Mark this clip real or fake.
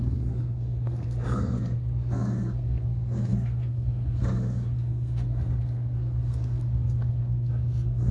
fake